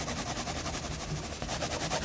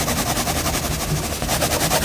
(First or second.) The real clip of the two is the second